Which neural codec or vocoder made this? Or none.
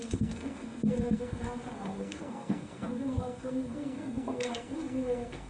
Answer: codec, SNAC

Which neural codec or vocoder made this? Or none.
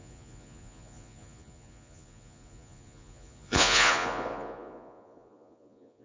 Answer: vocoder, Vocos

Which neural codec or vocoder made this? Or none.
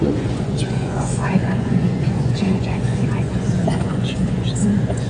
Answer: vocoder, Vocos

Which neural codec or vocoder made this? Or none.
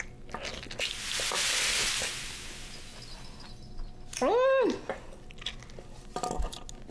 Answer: none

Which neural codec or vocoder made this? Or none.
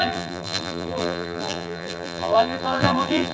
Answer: vocoder, BigVGAN v2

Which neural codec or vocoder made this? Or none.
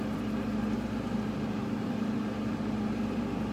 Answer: none